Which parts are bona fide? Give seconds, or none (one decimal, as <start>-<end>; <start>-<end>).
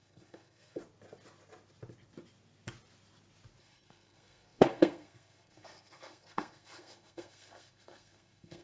0.8-3.6